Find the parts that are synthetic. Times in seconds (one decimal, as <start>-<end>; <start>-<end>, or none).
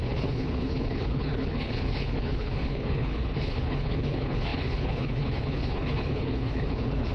0.0-7.1